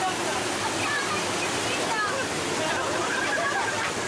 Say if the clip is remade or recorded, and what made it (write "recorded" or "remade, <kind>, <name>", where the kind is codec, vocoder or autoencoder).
recorded